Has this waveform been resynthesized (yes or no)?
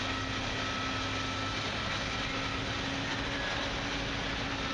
no